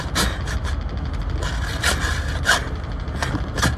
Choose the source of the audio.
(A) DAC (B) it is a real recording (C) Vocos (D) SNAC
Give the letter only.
B